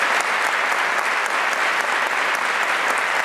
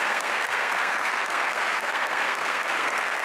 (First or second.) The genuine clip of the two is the first